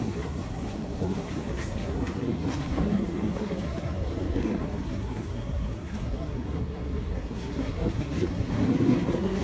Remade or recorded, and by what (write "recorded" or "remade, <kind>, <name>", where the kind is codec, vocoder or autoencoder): remade, codec, SNAC